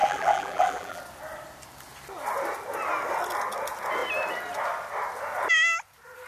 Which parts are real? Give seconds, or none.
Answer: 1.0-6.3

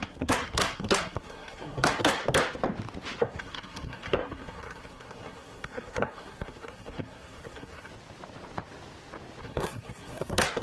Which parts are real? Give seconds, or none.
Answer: 2.2-3.2; 7.9-9.4

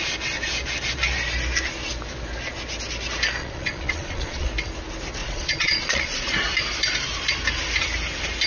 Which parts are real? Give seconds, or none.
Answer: 0.0-3.4; 4.5-5.2; 6.3-8.5

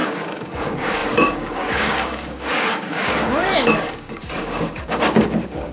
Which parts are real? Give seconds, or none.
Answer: none